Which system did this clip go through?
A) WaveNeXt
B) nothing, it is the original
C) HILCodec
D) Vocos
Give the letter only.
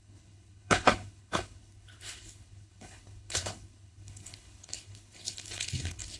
C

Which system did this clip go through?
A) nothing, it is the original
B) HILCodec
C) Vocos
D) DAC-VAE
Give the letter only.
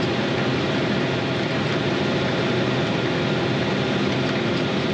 A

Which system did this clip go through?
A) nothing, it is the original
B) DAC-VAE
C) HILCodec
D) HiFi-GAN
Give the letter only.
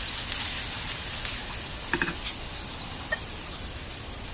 A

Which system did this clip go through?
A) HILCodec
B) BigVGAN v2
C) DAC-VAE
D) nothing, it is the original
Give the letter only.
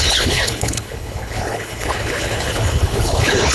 A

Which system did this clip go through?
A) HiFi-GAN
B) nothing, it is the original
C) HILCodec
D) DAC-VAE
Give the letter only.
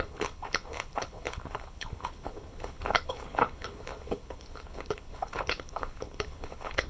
C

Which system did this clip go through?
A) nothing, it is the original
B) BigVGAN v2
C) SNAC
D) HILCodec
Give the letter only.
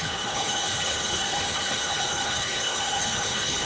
D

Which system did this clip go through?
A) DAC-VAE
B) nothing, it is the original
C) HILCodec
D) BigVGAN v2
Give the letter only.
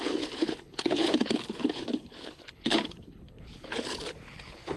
C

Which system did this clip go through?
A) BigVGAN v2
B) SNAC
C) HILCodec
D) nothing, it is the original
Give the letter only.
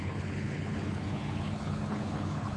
C